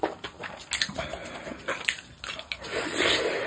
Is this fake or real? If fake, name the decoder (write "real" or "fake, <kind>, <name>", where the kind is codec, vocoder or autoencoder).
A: real